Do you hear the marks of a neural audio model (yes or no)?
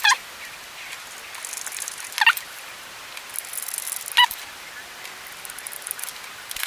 no